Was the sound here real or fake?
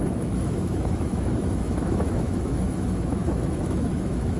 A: fake